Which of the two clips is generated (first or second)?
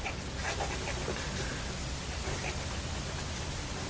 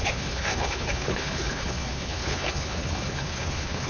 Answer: second